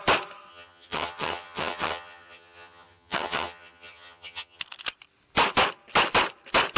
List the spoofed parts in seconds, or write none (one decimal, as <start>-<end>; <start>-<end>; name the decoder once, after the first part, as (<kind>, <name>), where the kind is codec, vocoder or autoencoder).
0.5-4.6 (vocoder, HiFi-GAN)